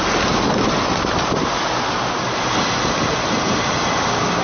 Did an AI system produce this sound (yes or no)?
no